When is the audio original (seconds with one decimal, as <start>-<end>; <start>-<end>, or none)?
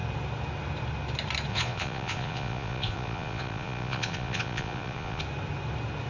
0.0-1.5; 5.2-6.1